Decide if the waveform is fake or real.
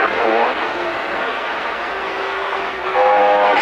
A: fake